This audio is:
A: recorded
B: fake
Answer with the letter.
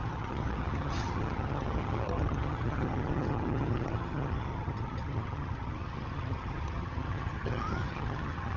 B